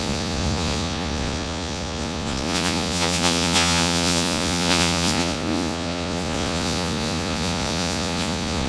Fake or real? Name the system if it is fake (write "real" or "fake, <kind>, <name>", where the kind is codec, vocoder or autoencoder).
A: fake, vocoder, Vocos